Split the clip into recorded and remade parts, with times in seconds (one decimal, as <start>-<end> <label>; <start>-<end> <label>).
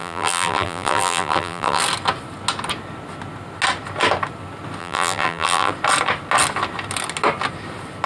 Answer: 0.0-1.8 remade; 1.8-4.8 recorded; 4.8-5.7 remade; 5.7-8.1 recorded